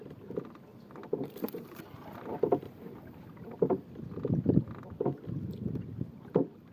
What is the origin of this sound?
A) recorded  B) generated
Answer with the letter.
A